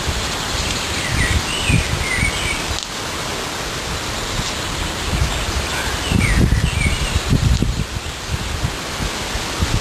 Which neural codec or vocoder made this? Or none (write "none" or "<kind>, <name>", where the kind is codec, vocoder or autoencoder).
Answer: none